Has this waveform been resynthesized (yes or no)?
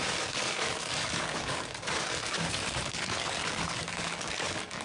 yes